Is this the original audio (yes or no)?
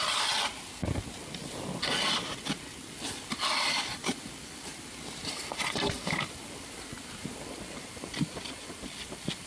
yes